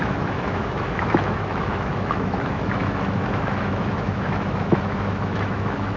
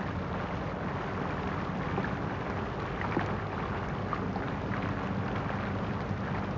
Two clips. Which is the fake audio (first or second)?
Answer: first